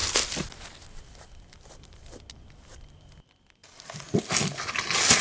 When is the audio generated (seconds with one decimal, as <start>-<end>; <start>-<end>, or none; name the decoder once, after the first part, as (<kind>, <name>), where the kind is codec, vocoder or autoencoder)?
none